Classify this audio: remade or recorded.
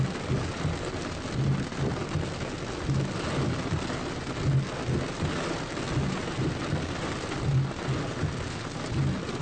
recorded